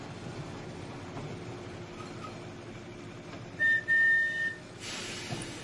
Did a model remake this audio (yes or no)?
no